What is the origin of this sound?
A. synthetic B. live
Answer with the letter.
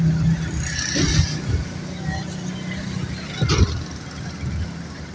B